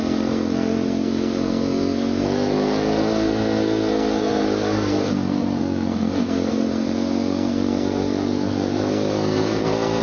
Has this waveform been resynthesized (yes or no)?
yes